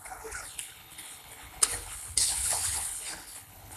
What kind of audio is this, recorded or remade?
remade